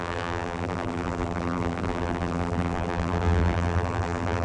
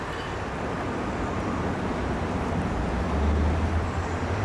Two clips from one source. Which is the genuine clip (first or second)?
second